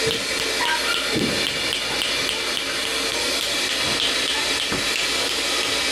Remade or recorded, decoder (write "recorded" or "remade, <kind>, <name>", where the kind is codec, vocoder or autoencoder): recorded